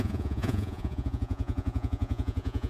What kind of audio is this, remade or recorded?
remade